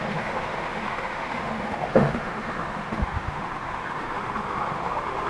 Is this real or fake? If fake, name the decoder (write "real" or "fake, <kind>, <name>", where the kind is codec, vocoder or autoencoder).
fake, autoencoder, DAC-VAE